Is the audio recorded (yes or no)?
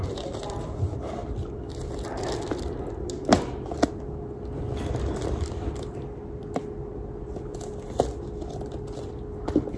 yes